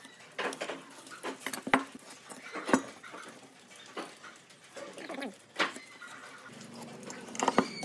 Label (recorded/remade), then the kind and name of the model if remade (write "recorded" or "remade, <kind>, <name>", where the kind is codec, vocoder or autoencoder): recorded